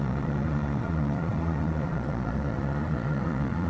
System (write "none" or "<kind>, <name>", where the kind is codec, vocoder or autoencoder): vocoder, Vocos